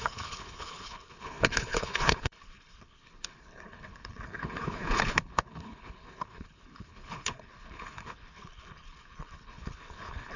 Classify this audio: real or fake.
fake